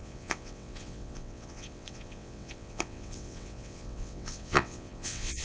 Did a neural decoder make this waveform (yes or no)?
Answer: yes